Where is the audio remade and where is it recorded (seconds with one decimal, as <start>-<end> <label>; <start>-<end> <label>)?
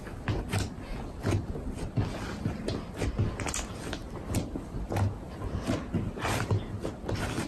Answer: 0.0-7.5 recorded